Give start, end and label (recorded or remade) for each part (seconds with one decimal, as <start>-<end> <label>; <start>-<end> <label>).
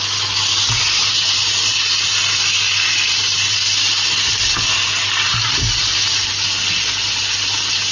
0.0-7.9 recorded